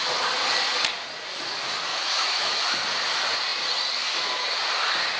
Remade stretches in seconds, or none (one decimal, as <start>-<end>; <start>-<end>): 1.9-2.6